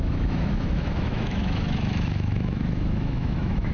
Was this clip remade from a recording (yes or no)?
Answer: yes